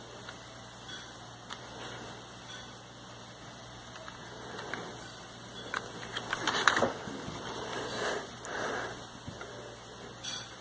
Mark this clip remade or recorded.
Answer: recorded